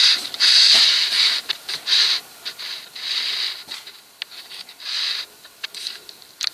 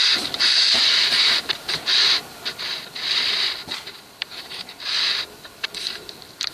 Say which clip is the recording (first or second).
first